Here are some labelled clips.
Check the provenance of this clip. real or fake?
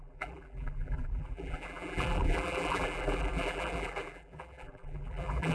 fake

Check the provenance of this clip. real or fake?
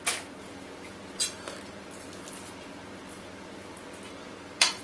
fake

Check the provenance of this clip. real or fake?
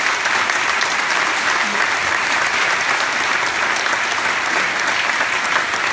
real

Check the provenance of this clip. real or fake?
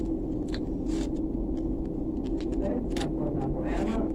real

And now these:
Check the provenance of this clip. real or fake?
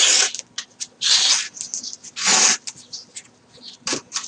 real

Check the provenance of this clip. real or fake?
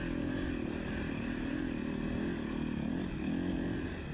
real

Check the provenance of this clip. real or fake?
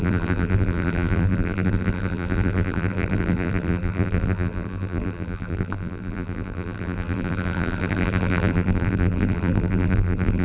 fake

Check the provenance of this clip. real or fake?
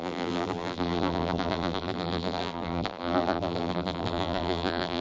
fake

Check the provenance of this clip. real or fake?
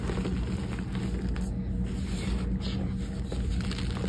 real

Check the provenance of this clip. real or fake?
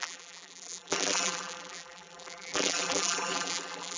fake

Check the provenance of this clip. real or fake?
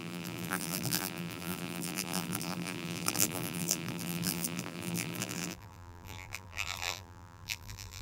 fake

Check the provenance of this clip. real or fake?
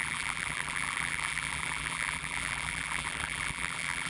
fake